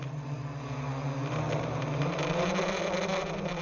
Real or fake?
real